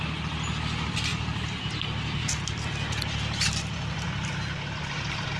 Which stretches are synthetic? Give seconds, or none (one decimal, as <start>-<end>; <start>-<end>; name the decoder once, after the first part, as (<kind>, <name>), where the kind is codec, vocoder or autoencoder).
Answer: 2.2-5.4 (vocoder, BigVGAN v2)